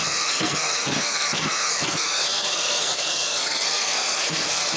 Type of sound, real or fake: fake